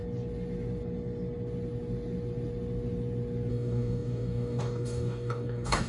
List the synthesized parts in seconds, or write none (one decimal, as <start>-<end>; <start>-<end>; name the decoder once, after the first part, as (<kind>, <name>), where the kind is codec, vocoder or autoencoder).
3.5-5.9 (codec, DAC)